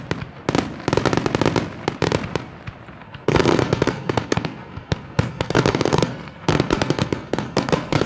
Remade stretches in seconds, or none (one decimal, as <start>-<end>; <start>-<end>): 3.0-8.1